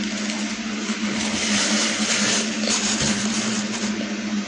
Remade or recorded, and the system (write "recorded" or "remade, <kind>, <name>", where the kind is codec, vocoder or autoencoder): recorded